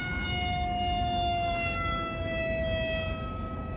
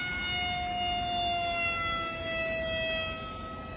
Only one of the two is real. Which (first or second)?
second